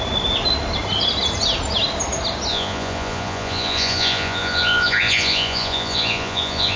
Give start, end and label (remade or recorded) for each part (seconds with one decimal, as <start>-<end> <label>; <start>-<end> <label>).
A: 0.0-2.5 recorded; 2.5-6.8 remade